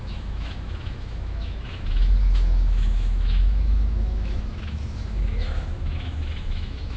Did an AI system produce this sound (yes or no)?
yes